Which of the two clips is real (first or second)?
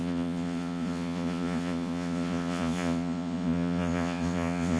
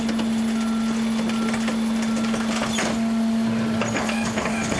second